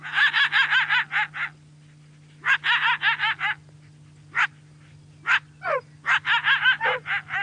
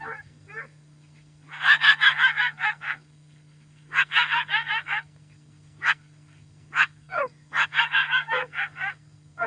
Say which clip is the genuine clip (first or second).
first